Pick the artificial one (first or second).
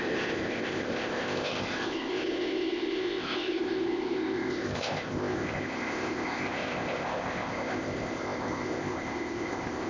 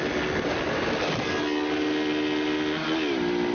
first